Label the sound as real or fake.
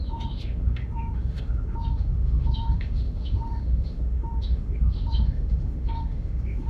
fake